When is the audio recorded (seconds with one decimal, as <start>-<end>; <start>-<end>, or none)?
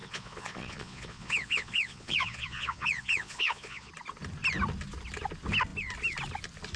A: 3.9-6.8